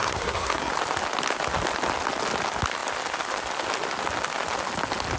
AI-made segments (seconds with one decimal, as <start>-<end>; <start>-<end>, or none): 0.0-0.7